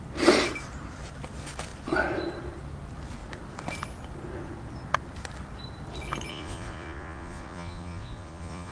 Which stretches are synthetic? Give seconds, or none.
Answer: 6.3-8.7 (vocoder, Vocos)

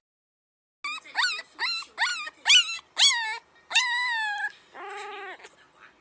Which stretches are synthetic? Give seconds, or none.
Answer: none

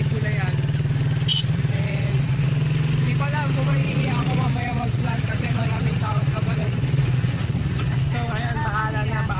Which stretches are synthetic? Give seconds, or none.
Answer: 1.3-2.5 (vocoder, Vocos); 3.7-8.0

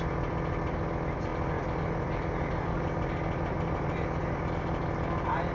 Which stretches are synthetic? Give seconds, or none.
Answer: none

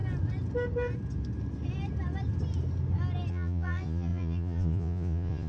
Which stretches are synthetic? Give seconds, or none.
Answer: 3.3-5.5 (vocoder, Vocos)

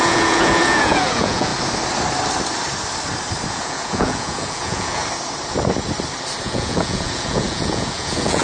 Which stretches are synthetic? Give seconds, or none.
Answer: 0.0-1.5 (vocoder, Vocos); 3.5-5.0; 6.4-8.4

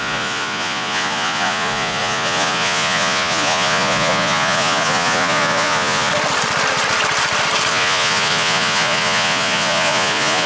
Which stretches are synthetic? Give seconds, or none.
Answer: 0.0-6.1 (vocoder, Vocos); 7.7-10.5